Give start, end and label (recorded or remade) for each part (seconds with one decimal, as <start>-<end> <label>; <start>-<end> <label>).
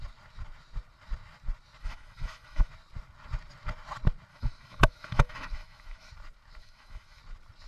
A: 0.0-1.8 recorded; 1.8-2.7 remade; 2.7-4.3 recorded; 4.3-6.1 remade; 6.1-6.6 recorded; 6.6-7.2 remade; 7.2-7.7 recorded